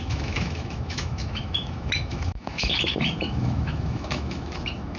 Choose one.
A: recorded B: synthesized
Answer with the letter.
B